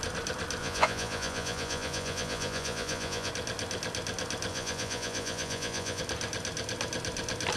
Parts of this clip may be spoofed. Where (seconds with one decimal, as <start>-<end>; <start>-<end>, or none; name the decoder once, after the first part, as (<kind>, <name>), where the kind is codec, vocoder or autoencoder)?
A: 0.6-3.3 (vocoder, Vocos); 4.5-6.0